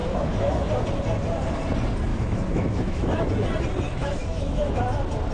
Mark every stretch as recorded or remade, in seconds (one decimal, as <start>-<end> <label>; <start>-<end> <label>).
0.0-0.7 remade; 0.7-2.1 recorded; 2.1-3.3 remade; 3.3-4.0 recorded; 4.0-4.8 remade; 4.8-5.3 recorded